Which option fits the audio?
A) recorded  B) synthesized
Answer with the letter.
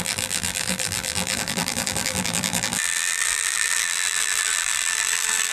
B